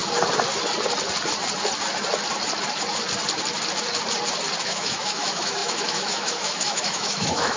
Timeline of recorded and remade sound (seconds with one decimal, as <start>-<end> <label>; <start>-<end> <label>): 0.0-4.6 recorded; 4.6-7.6 remade